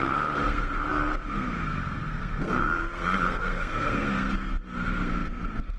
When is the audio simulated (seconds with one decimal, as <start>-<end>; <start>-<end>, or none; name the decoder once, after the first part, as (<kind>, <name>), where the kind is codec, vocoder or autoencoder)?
0.0-5.8 (codec, SNAC)